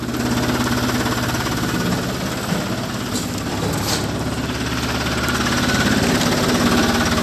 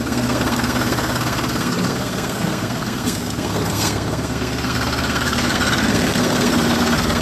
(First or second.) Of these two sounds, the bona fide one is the first